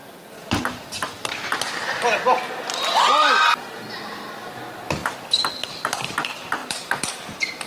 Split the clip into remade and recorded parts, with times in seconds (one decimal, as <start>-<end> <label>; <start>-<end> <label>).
0.0-6.6 recorded; 6.6-7.7 remade